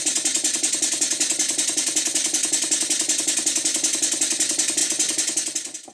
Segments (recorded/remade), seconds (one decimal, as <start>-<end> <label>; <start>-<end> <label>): 0.0-5.9 recorded